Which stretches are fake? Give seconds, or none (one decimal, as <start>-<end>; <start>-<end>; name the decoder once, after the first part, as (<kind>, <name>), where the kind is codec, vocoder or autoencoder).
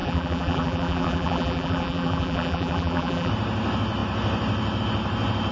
0.0-3.3 (vocoder, BigVGAN v2)